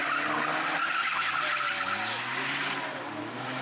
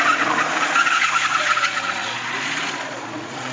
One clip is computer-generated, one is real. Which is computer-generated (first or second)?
second